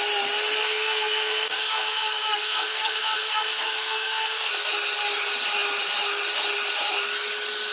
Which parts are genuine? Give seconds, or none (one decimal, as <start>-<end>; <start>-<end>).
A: 0.0-0.6; 4.5-7.7